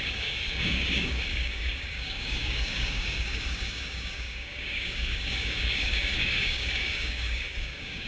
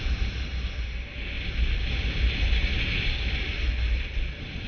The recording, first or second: second